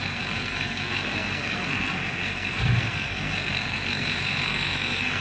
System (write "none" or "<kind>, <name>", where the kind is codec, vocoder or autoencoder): codec, SNAC